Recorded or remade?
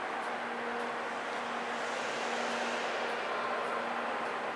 recorded